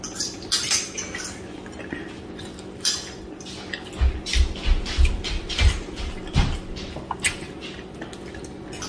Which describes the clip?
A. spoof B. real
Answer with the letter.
B